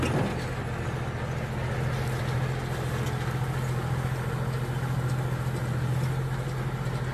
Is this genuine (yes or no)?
yes